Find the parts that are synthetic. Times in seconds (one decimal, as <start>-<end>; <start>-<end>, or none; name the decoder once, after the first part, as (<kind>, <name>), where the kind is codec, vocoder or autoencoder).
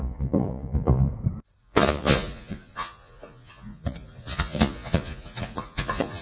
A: 0.0-1.1 (vocoder, Vocos); 1.6-6.2